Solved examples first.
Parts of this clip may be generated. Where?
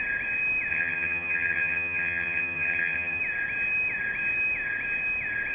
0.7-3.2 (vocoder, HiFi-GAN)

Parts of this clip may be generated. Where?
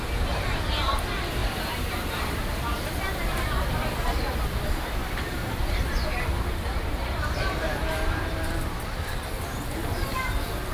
1.4-3.8 (vocoder, BigVGAN v2); 5.0-8.8